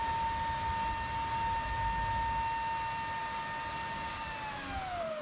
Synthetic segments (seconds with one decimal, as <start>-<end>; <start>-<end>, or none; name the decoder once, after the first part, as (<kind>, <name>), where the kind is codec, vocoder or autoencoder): none